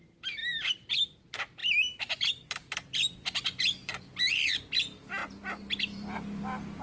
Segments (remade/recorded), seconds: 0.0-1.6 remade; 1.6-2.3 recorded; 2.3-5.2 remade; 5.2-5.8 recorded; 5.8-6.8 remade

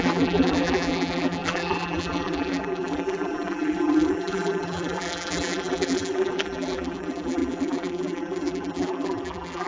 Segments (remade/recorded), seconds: 0.0-9.7 remade

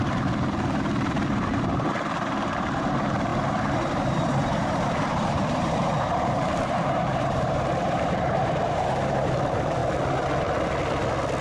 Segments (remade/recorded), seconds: 0.0-9.8 remade; 9.8-11.4 recorded

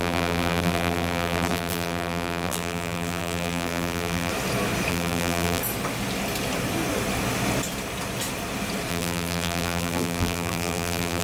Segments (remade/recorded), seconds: 0.0-4.3 remade; 4.3-4.9 recorded; 4.9-5.6 remade; 5.6-8.9 recorded; 8.9-11.2 remade